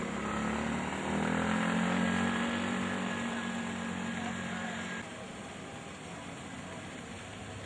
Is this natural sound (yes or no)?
yes